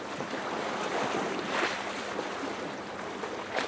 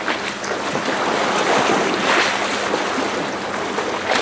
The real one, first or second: second